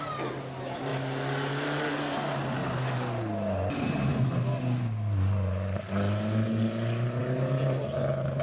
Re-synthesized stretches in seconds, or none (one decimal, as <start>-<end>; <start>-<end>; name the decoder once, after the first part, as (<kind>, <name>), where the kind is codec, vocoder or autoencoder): none

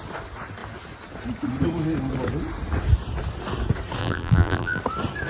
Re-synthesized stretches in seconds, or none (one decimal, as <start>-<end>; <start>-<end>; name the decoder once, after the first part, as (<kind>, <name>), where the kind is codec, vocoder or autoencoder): 4.0-4.8 (vocoder, BigVGAN v2)

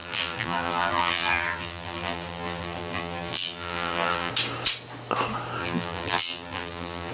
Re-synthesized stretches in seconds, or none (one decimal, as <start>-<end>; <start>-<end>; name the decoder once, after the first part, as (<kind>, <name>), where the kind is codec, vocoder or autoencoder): 0.0-4.3 (vocoder, BigVGAN v2); 5.6-7.1

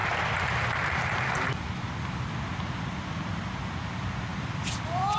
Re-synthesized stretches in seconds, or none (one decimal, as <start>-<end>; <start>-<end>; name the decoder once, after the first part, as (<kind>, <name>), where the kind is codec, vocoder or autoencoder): 0.0-2.2 (vocoder, BigVGAN v2); 4.3-5.2

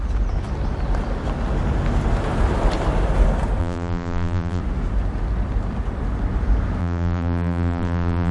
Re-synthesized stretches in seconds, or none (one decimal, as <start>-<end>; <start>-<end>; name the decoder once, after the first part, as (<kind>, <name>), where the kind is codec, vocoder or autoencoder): 3.6-4.6 (vocoder, BigVGAN v2); 6.8-8.3